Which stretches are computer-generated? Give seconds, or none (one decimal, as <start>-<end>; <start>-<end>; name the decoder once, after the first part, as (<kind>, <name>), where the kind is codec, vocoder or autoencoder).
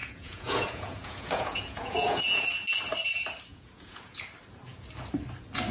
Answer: 0.0-2.5 (vocoder, Vocos); 3.5-4.2